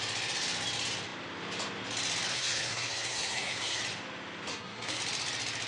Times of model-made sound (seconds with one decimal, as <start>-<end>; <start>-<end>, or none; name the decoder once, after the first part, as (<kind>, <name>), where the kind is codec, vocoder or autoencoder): 2.3-3.8 (codec, SNAC); 4.5-5.0

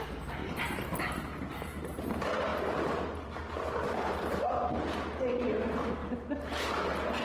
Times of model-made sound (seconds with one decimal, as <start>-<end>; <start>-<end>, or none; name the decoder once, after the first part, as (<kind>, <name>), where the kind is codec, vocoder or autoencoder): 0.4-1.0 (vocoder, BigVGAN v2); 2.5-4.3

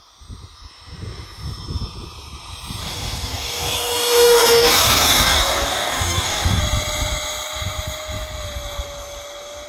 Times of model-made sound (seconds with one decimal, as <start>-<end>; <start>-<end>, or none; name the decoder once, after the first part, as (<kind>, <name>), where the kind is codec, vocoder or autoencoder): 2.8-6.6 (codec, DAC)

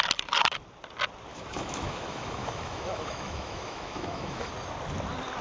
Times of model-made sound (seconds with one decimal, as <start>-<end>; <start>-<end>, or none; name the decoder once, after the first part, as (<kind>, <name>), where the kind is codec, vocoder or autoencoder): 1.3-4.5 (autoencoder, DAC-VAE)